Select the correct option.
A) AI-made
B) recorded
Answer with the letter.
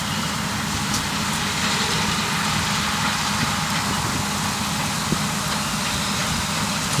B